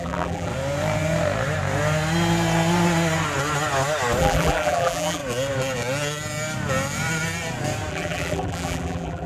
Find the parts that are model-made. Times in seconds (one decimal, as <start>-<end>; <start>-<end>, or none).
0.0-0.5; 4.2-5.2; 7.9-9.3